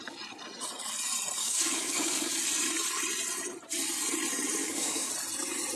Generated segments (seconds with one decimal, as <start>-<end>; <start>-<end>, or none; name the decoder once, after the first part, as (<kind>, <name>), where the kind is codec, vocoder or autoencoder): 1.4-2.3 (codec, DAC); 4.6-5.1